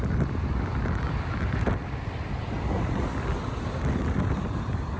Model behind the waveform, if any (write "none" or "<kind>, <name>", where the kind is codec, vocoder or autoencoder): none